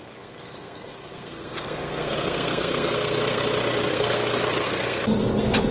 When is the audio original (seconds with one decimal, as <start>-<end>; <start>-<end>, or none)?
3.4-3.9; 5.0-5.7